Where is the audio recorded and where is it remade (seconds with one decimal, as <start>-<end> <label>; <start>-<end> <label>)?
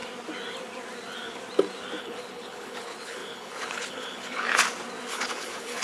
0.0-2.0 recorded; 2.0-4.5 remade; 4.5-5.1 recorded; 5.1-5.8 remade